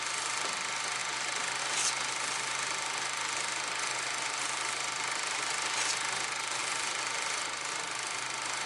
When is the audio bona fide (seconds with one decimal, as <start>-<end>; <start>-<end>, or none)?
0.0-8.7